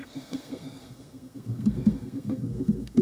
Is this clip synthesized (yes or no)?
yes